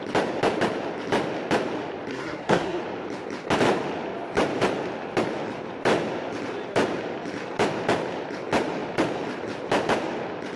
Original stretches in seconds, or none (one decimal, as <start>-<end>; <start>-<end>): 0.0-2.1; 2.8-10.6

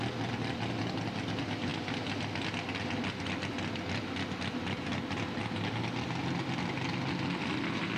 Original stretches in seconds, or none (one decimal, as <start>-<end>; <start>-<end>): 0.0-8.0

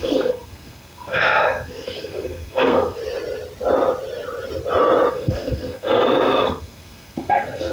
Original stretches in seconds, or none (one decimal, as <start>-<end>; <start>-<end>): 3.0-5.1

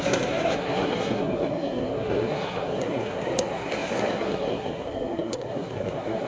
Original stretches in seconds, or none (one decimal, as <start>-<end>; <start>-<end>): none